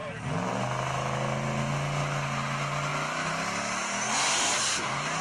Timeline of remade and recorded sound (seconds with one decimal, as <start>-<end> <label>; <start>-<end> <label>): 0.0-5.2 recorded